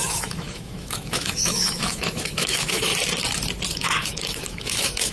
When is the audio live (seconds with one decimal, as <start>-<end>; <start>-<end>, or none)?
2.9-3.7